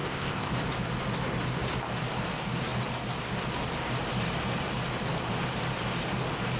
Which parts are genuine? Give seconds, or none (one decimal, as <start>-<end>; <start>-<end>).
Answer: 0.5-6.6